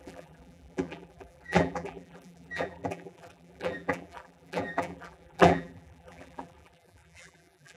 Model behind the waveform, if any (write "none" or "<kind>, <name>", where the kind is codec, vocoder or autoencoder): vocoder, BigVGAN v2